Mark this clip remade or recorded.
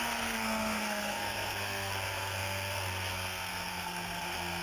remade